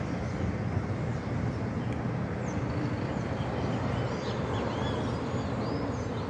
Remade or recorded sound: recorded